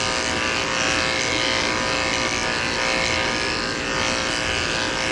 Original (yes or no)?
yes